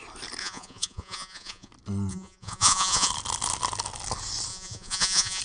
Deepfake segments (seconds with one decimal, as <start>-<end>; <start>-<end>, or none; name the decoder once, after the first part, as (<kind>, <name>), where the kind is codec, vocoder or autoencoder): 0.4-1.7 (vocoder, Vocos); 2.1-3.1; 4.5-5.4